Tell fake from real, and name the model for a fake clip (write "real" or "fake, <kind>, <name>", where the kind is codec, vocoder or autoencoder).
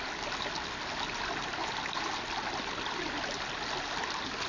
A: real